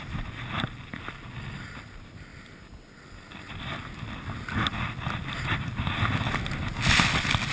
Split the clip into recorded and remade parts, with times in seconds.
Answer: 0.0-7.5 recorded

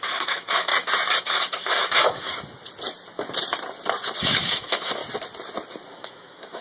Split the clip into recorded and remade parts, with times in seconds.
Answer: 0.0-0.7 remade; 0.7-1.2 recorded; 1.2-2.3 remade; 2.3-4.2 recorded; 4.2-5.0 remade; 5.0-5.9 recorded; 5.9-6.6 remade